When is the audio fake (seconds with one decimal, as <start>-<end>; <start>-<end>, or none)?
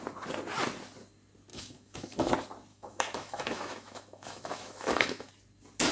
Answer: 1.5-2.3; 2.7-5.3